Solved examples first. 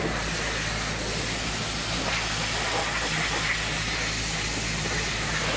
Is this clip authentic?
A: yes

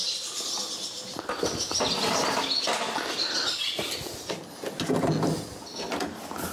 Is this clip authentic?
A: yes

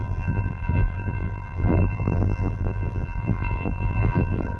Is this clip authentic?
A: no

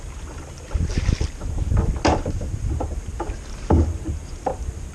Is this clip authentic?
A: yes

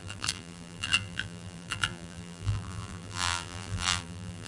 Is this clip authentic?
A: no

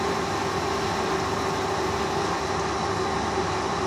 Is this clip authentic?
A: yes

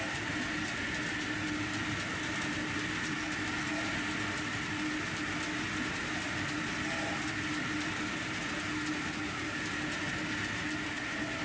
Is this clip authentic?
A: yes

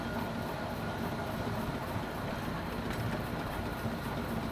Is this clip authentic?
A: yes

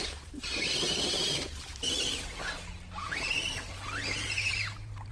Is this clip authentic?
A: no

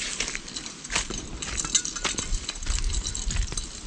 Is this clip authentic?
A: yes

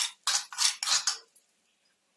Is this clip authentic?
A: yes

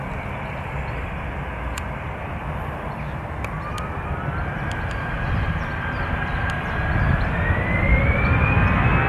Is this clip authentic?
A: yes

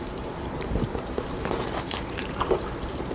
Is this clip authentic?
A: no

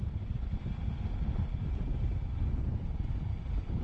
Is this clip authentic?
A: yes